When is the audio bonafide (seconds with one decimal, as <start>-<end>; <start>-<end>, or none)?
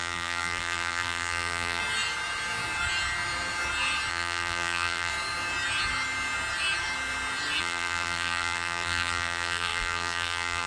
1.8-4.1; 5.1-7.6